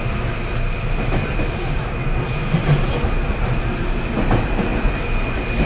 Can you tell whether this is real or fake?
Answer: real